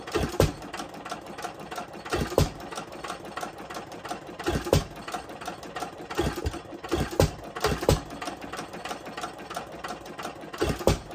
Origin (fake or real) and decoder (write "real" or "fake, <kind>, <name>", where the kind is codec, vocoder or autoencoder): real